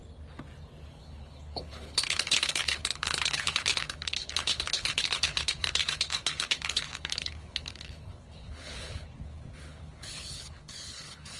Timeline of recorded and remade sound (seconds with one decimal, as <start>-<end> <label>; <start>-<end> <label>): 0.0-0.9 recorded; 0.9-11.4 remade